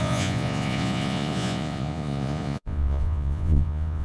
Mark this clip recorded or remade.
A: remade